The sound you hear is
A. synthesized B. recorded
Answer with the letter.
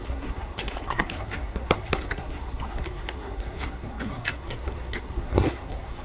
A